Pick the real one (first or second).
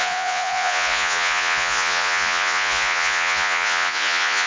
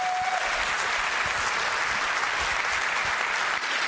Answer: second